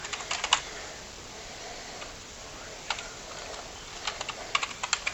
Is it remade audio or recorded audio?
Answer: recorded